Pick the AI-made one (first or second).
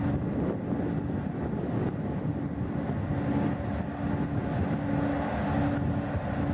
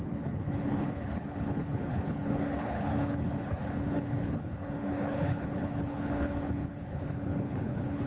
second